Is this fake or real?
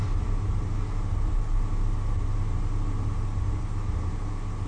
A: real